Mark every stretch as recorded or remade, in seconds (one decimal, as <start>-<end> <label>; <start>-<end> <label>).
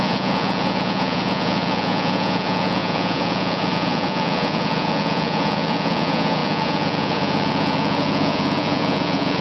0.0-9.4 remade